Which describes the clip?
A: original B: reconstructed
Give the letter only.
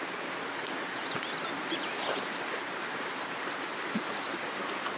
A